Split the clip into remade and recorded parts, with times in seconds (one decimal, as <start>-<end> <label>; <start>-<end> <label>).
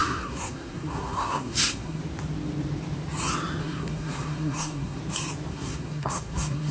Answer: 0.0-2.0 remade; 2.0-3.6 recorded; 3.6-5.0 remade; 5.0-5.5 recorded; 5.5-6.7 remade